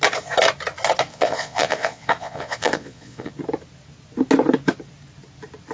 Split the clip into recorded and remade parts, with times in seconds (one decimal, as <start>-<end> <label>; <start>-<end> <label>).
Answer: 0.0-1.1 recorded; 1.1-3.3 remade; 3.3-5.7 recorded